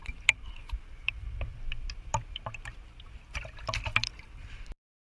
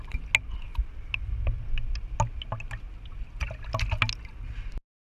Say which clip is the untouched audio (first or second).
second